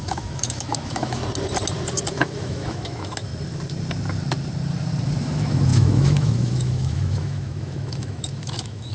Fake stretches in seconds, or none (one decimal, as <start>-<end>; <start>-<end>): 0.0-1.2; 2.1-3.3; 5.2-8.9